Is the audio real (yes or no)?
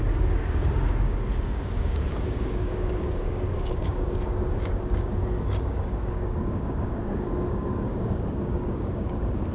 no